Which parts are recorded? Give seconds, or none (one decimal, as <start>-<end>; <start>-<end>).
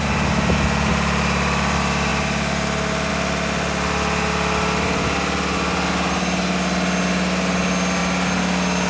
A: 0.0-8.9